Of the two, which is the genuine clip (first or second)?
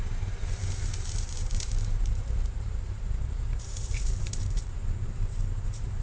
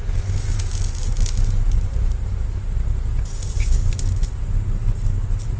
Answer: second